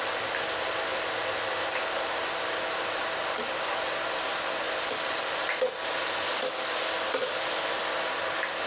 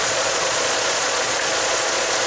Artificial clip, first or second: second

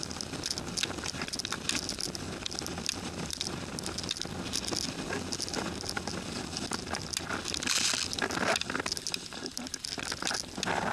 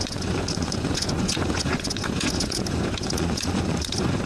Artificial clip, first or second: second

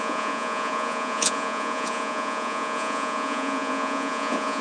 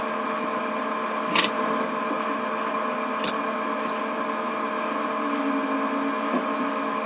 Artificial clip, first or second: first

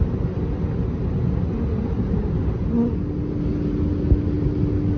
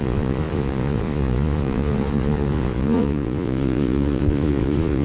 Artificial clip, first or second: second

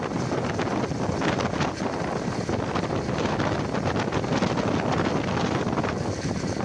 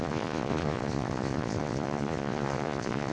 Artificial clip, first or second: second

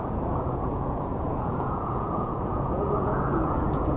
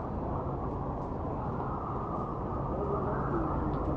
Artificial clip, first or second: first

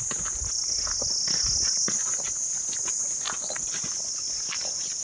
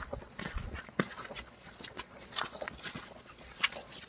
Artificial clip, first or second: second